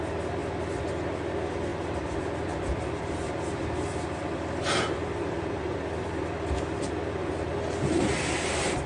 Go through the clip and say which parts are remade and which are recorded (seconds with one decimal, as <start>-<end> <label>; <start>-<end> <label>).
0.0-0.4 recorded; 0.4-0.9 remade; 0.9-1.7 recorded; 1.7-6.9 remade; 6.9-8.9 recorded